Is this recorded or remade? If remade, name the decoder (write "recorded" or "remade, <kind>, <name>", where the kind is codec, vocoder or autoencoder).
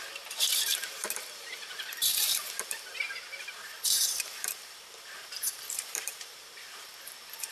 remade, vocoder, BigVGAN v2